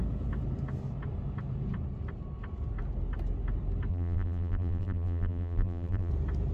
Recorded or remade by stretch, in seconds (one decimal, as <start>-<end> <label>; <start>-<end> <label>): 0.0-3.9 recorded; 3.9-6.1 remade; 6.1-6.5 recorded